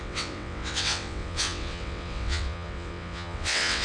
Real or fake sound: fake